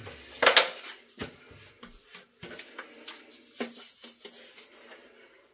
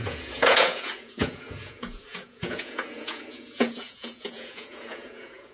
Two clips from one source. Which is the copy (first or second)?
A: second